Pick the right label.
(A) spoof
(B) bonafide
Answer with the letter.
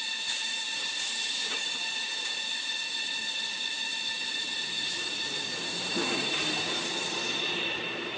A